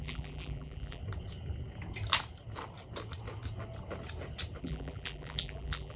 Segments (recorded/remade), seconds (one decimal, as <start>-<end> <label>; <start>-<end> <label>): 0.0-1.0 remade; 1.0-4.6 recorded; 4.6-6.0 remade